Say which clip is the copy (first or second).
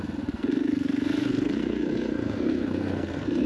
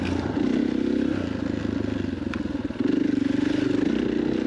first